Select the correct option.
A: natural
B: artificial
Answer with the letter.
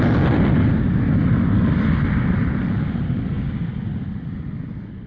A